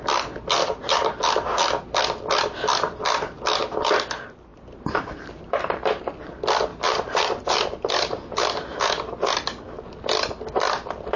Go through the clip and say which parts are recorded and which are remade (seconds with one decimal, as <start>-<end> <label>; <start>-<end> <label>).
0.0-0.6 recorded; 0.6-1.2 remade; 1.2-4.5 recorded; 4.5-6.0 remade; 6.0-6.7 recorded; 6.7-9.8 remade; 9.8-11.2 recorded

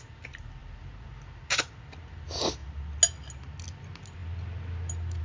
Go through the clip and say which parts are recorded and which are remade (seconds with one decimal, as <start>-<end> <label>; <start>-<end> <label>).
0.0-5.2 recorded